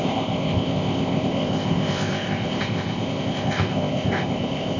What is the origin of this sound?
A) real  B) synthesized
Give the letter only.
B